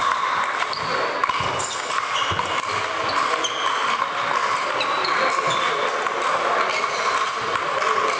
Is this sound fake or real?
real